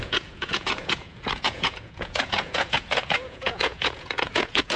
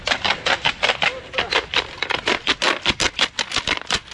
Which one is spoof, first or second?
first